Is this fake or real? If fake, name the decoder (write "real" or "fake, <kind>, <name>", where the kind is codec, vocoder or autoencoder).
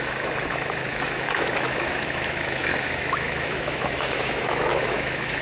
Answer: fake, autoencoder, DAC-VAE